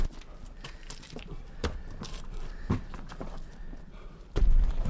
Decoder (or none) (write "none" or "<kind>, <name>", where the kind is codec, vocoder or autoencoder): vocoder, BigVGAN v2